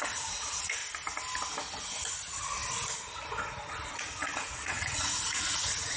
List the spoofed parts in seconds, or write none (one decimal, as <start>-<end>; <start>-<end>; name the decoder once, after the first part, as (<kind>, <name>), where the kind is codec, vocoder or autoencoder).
0.0-0.8 (vocoder, Vocos); 2.1-2.6; 3.9-6.0